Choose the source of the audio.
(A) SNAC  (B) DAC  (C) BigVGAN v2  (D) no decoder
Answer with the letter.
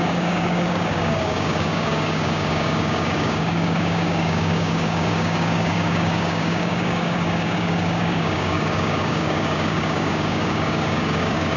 B